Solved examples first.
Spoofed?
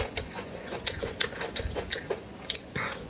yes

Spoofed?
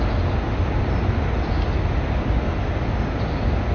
no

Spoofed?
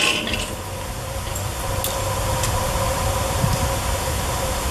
no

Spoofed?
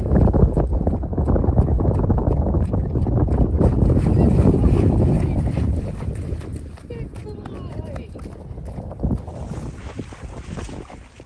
no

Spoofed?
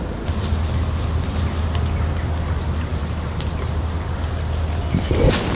no